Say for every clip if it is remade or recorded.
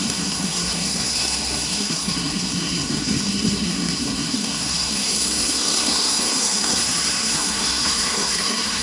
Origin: remade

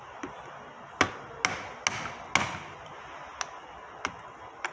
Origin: recorded